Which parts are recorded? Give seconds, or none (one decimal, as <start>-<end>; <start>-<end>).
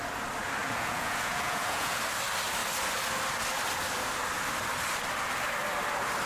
0.0-0.6; 2.0-6.3